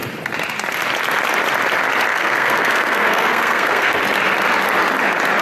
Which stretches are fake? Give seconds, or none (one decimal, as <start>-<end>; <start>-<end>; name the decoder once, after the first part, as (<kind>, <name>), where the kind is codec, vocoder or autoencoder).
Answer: 2.1-4.0 (codec, SNAC)